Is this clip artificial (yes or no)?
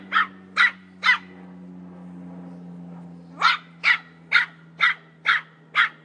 no